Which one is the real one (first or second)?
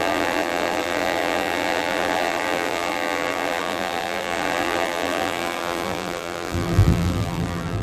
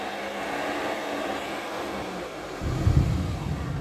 second